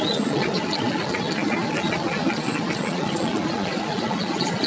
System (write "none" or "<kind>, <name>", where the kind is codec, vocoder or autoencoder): vocoder, Vocos